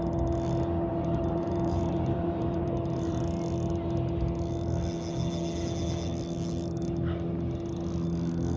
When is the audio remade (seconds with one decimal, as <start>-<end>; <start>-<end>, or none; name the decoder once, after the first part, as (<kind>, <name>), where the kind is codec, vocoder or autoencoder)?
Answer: 0.9-3.2 (vocoder, BigVGAN v2)